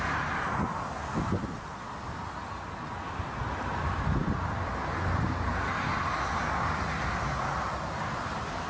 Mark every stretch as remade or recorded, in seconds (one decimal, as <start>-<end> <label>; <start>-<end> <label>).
0.0-8.7 recorded